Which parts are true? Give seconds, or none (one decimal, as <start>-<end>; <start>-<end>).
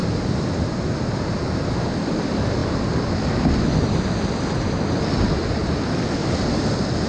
0.0-7.1